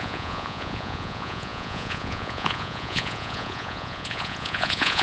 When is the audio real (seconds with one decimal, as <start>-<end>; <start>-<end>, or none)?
none